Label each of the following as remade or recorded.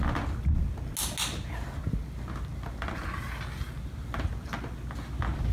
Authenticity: recorded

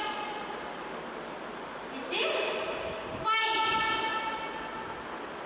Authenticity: recorded